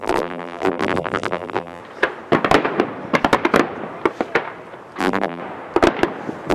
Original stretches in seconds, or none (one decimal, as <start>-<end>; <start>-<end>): 1.8-5.0; 5.4-6.5